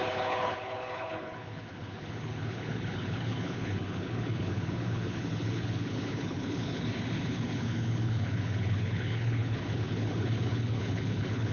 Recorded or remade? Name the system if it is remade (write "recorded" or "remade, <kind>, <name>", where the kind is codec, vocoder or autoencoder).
remade, codec, HILCodec